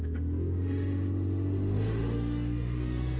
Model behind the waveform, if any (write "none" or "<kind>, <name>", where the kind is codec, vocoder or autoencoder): autoencoder, DAC-VAE